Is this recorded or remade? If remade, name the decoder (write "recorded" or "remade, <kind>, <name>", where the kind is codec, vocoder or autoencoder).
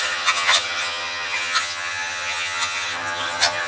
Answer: remade, vocoder, HiFi-GAN